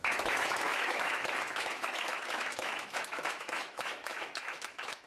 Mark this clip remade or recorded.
remade